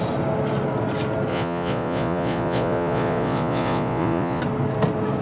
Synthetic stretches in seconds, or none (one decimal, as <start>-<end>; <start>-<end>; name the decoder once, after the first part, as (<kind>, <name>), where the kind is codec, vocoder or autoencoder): 1.3-4.4 (vocoder, Vocos)